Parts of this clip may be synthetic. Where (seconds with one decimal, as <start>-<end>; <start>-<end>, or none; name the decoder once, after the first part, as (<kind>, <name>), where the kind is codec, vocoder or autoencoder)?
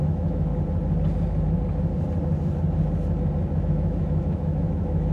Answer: 0.0-0.5 (autoencoder, DAC-VAE); 3.6-5.1